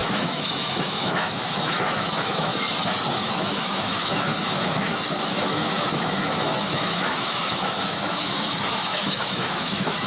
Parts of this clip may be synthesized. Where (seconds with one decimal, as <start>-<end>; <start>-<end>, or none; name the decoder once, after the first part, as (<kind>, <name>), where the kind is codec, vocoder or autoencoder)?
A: 0.0-2.5 (autoencoder, DAC-VAE); 3.2-10.1